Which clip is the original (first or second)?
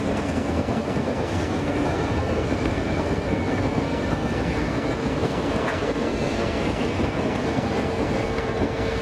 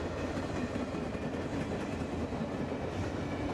second